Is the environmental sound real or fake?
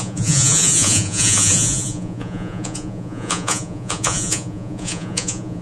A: fake